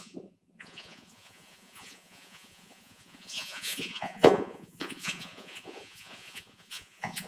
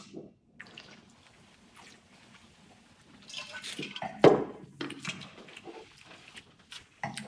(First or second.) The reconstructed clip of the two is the first